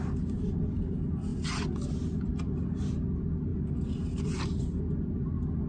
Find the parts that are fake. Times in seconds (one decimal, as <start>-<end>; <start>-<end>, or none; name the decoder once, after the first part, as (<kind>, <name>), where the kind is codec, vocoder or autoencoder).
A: none